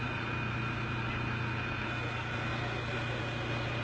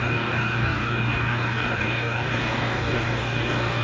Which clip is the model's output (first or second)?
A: second